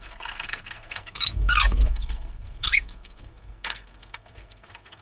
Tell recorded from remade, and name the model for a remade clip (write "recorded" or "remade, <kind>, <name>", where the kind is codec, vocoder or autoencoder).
remade, codec, SNAC